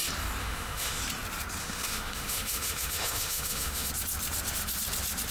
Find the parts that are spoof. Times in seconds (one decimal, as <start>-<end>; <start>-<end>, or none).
0.4-1.0; 1.6-3.9